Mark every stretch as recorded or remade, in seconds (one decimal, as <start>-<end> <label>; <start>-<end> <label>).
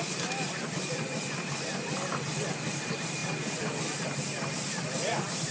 0.0-5.5 recorded